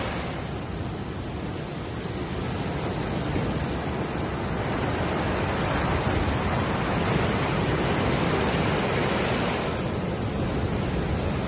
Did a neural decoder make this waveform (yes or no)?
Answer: no